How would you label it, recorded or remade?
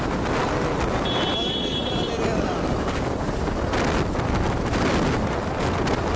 recorded